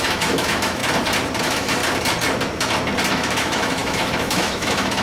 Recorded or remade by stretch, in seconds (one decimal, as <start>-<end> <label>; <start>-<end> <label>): 0.0-0.8 remade; 0.8-1.4 recorded; 1.4-1.8 remade; 1.8-3.1 recorded; 3.1-5.0 remade